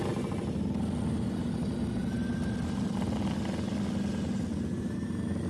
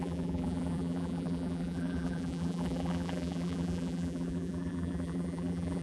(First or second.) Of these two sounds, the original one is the first